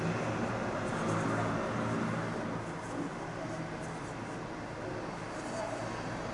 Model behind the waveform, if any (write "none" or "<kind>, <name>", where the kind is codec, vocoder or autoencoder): none